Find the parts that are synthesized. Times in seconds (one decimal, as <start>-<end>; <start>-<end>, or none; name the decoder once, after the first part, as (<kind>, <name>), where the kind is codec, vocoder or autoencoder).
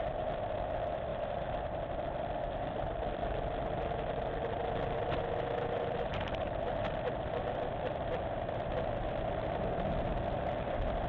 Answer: 1.1-3.9 (vocoder, BigVGAN v2); 6.1-8.6